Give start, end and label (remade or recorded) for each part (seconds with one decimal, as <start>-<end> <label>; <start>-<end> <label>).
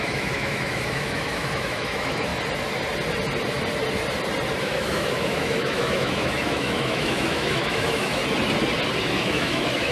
0.0-2.3 remade; 2.3-4.6 recorded; 4.6-8.2 remade; 8.2-9.0 recorded; 9.0-9.9 remade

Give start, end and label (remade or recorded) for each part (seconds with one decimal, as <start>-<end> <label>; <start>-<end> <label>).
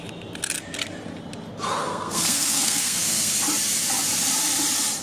0.0-1.8 recorded; 1.8-3.4 remade; 3.4-5.0 recorded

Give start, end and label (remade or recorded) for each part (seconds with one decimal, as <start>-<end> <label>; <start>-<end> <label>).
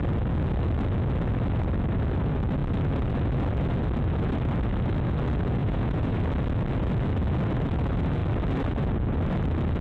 0.0-5.6 recorded; 5.6-6.2 remade; 6.2-9.8 recorded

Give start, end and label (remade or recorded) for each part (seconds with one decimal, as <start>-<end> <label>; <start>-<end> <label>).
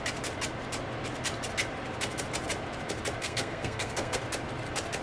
0.0-3.2 recorded; 3.2-4.2 remade; 4.2-5.0 recorded